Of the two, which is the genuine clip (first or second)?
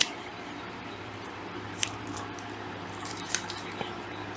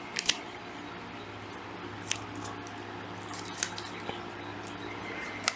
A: second